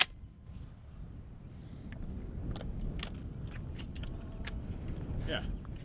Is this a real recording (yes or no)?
yes